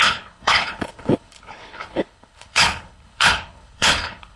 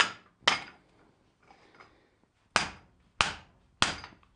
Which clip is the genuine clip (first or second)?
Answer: second